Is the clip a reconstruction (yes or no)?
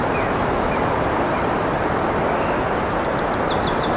no